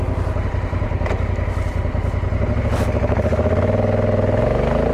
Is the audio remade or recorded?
recorded